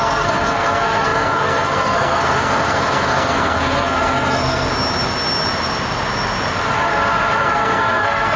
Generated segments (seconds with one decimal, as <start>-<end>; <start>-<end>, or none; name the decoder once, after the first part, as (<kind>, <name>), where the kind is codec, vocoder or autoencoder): 0.0-4.7 (codec, SNAC); 7.4-8.4